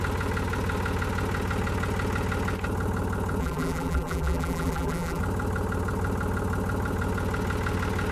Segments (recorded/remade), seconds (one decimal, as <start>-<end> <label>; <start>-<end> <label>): 0.0-3.4 recorded; 3.4-5.2 remade; 5.2-8.1 recorded

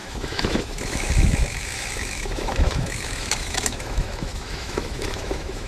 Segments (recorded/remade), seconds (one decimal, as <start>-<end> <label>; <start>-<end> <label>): 0.0-5.7 remade

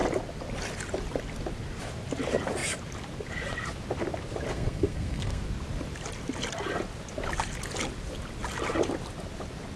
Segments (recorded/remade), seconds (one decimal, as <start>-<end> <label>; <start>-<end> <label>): 0.0-4.5 recorded; 4.5-5.4 remade; 5.4-9.8 recorded

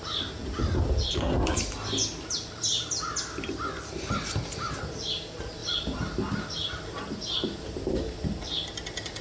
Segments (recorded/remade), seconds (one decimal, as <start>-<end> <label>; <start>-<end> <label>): 0.0-9.2 recorded

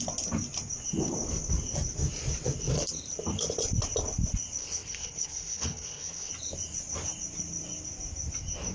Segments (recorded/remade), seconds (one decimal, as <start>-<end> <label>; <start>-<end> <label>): 0.0-4.6 recorded; 4.6-6.3 remade; 6.3-8.7 recorded

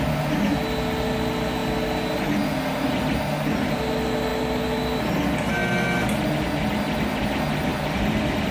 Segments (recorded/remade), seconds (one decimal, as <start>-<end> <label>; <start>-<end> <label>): 0.0-1.6 remade; 1.6-3.5 recorded; 3.5-7.7 remade; 7.7-8.5 recorded

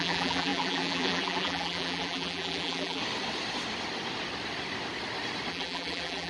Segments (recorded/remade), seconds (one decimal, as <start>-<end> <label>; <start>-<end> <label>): 0.0-3.0 remade; 3.0-5.5 recorded; 5.5-6.3 remade